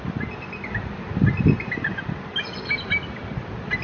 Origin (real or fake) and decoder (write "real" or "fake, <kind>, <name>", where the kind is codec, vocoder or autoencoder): real